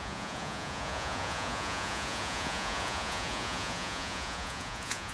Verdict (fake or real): fake